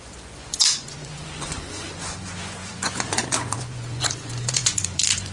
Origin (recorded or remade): remade